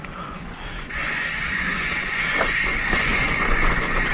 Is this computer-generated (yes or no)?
yes